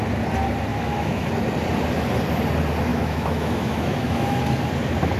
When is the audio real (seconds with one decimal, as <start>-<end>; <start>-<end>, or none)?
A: 0.0-0.7; 1.3-2.9; 4.4-5.2